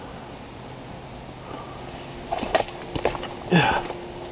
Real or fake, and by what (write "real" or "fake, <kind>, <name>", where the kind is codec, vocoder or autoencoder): real